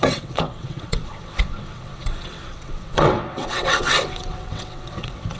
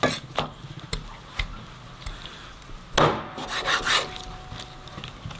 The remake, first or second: first